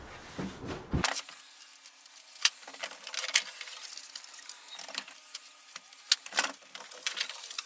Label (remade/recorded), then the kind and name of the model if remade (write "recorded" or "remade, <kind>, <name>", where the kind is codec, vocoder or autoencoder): recorded